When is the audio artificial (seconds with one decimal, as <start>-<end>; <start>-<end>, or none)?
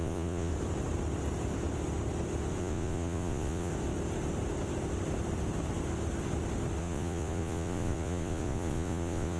0.0-0.5; 2.6-3.7; 6.8-9.4